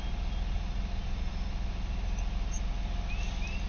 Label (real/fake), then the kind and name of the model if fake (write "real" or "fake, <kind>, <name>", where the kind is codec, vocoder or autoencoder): real